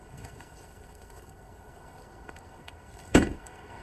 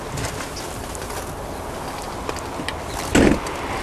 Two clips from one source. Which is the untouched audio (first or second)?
second